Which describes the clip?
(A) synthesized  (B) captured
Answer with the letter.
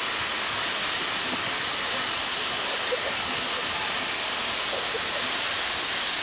B